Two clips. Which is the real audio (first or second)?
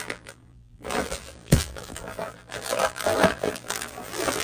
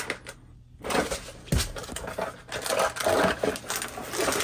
second